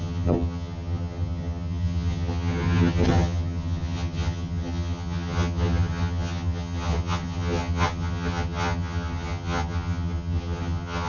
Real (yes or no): no